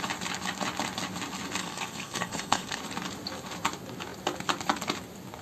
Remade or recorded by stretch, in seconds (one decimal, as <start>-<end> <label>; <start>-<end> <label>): 0.0-1.6 recorded; 1.6-2.8 remade; 2.8-5.4 recorded